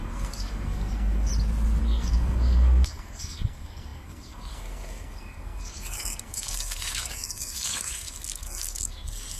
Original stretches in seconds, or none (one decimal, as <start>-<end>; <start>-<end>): 1.3-1.8

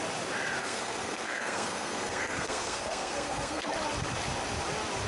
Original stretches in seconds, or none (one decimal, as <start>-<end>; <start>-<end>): 0.0-0.6; 3.7-5.1

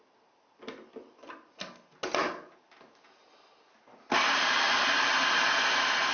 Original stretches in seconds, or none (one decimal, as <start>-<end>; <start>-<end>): 0.0-6.1